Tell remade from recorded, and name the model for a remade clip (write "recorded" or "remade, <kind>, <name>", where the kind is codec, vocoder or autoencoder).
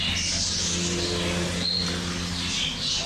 recorded